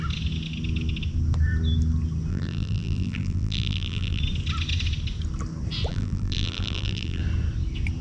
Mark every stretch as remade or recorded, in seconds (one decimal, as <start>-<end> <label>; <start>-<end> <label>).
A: 0.0-2.3 recorded; 2.3-4.2 remade; 4.2-5.9 recorded; 5.9-7.2 remade; 7.2-8.0 recorded